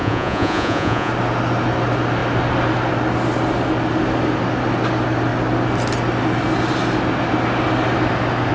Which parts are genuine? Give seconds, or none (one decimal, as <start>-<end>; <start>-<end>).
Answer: 1.1-8.5